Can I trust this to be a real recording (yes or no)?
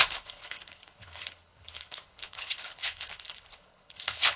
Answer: no